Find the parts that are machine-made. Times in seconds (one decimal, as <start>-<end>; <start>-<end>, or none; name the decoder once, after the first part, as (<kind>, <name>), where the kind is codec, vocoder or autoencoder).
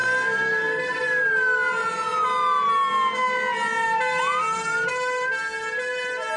none